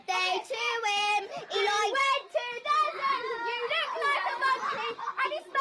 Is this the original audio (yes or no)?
no